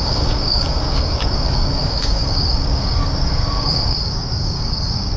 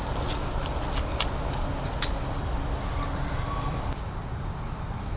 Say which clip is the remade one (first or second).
first